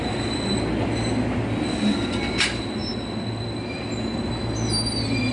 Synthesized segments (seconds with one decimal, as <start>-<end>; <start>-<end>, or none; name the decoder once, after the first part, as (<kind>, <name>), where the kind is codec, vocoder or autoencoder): none